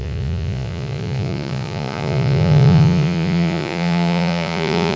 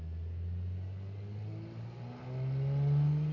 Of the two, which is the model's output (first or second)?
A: first